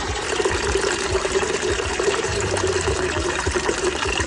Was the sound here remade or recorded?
remade